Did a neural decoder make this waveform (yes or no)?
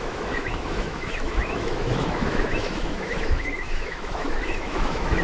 yes